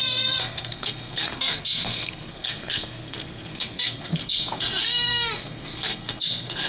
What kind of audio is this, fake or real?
fake